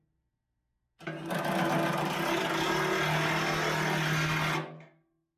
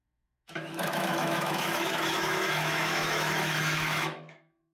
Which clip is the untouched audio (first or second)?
first